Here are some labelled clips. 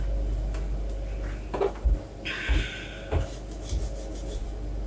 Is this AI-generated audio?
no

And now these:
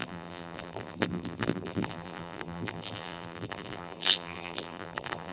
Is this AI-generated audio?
yes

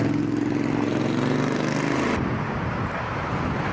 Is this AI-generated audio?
no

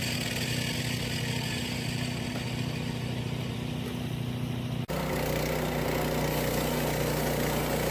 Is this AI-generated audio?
no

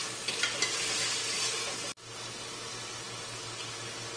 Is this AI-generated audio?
no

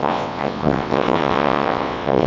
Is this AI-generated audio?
yes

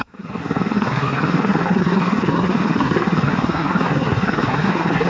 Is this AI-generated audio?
yes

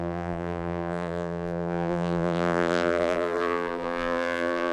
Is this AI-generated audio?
yes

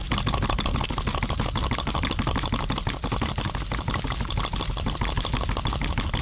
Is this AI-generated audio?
no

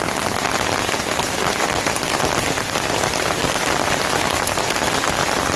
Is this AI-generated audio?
no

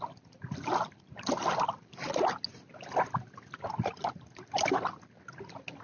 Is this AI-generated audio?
no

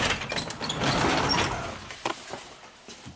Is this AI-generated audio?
no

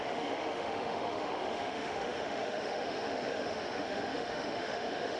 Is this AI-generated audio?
yes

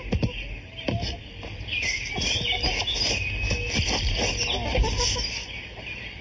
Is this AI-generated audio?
no